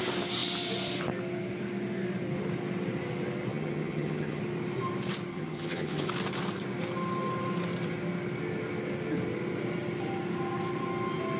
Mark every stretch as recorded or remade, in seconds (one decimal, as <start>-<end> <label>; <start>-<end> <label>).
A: 0.0-3.5 recorded; 3.5-4.4 remade; 4.4-5.3 recorded; 5.3-6.1 remade; 6.1-11.4 recorded